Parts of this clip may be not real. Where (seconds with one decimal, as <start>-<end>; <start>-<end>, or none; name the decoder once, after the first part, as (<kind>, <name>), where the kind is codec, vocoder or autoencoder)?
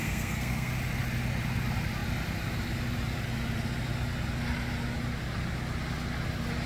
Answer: 0.0-0.7 (codec, SNAC)